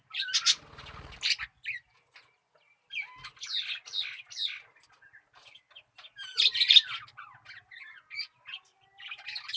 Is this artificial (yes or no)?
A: no